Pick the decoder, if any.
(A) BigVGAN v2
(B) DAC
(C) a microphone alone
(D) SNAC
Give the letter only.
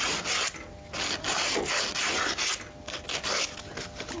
C